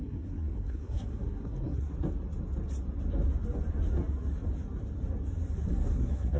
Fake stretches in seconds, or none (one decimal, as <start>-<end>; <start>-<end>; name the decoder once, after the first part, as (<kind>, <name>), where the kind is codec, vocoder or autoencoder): 0.0-1.9 (codec, SNAC); 5.7-6.4